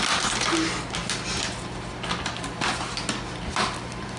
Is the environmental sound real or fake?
real